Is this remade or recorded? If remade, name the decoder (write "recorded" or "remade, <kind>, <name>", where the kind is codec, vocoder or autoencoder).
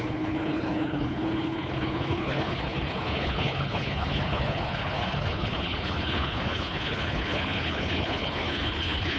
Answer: remade, codec, HILCodec